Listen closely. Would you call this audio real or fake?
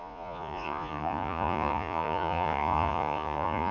fake